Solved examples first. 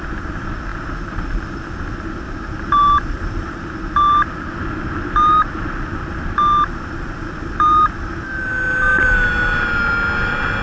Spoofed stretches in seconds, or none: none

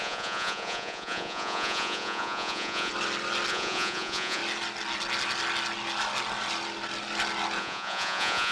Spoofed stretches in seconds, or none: 0.0-2.9; 3.5-4.4; 7.6-8.5

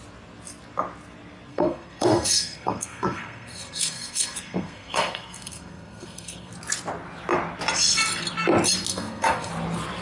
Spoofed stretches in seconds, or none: 1.5-6.5; 8.9-9.5

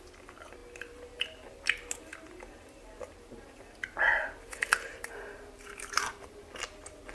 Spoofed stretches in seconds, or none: 4.9-6.4

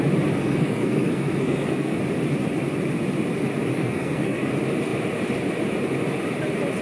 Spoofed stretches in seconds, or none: 0.4-2.0; 3.7-4.5